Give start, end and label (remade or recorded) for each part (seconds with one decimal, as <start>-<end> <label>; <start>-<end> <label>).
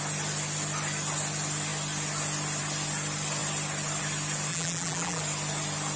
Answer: 0.0-4.5 recorded; 4.5-5.2 remade; 5.2-6.0 recorded